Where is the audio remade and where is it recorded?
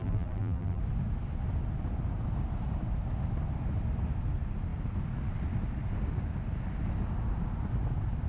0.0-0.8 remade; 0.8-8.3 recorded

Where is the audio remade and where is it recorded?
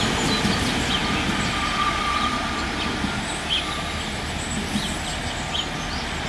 0.0-6.3 recorded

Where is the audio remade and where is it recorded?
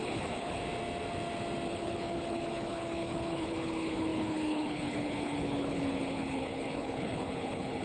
0.0-0.6 remade; 0.6-1.7 recorded; 1.7-7.8 remade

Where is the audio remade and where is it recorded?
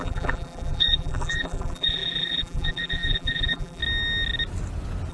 0.0-3.8 remade; 3.8-5.1 recorded